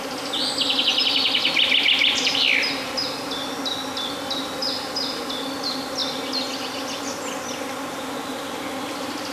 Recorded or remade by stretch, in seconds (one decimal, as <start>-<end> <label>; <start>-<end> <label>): 0.0-9.3 recorded